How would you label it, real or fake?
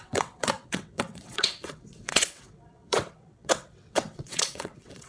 fake